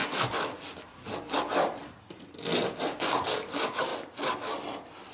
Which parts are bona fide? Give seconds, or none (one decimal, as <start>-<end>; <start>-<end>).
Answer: 0.0-5.1